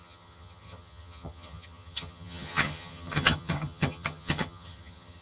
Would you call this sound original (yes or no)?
no